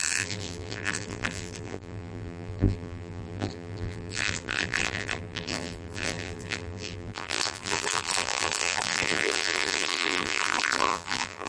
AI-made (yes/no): yes